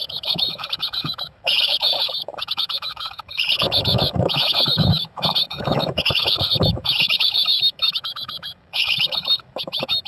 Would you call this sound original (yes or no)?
no